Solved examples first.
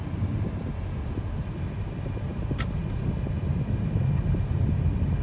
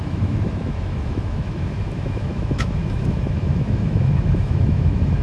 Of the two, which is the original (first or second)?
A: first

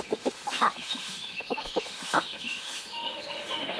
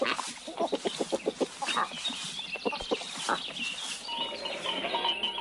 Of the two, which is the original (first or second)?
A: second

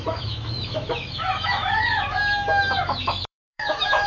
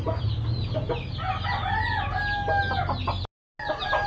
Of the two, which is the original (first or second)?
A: second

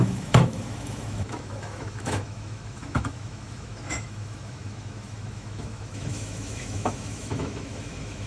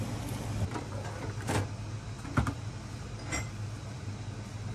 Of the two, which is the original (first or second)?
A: second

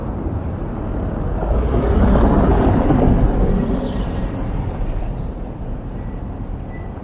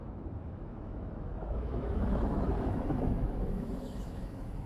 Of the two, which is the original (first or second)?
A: first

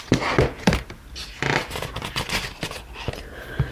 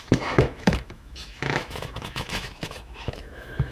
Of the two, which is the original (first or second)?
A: first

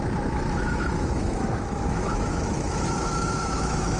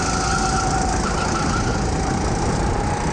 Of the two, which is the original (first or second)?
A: second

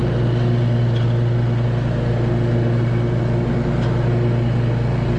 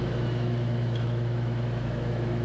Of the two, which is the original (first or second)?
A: first